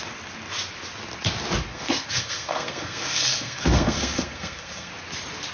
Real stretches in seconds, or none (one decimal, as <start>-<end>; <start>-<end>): 0.0-1.7; 4.9-5.5